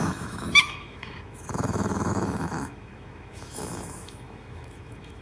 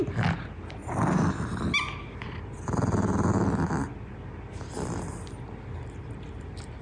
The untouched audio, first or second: second